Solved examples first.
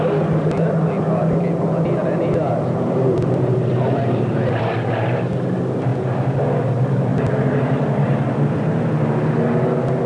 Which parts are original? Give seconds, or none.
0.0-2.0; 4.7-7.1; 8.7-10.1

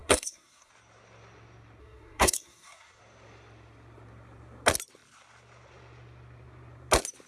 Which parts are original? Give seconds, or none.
0.7-1.8; 3.0-7.3

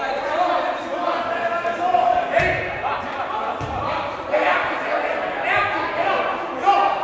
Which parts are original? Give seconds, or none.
0.0-7.0

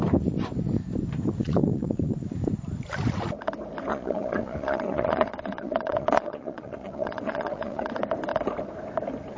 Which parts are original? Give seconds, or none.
0.0-1.3; 2.2-3.9; 7.9-9.4